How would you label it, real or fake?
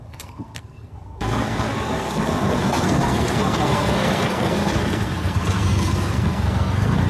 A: fake